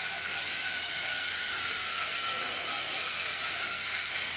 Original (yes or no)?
no